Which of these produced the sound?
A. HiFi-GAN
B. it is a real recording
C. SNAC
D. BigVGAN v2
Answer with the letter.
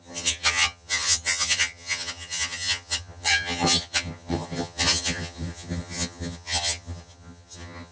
A